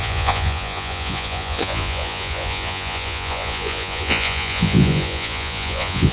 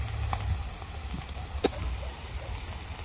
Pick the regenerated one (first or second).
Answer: first